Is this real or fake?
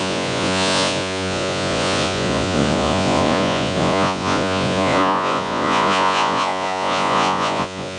fake